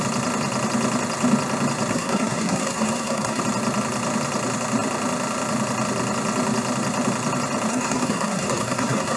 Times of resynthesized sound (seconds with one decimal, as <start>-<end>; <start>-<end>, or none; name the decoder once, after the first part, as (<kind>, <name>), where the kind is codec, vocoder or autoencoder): 1.9-3.4 (codec, SNAC); 7.7-9.2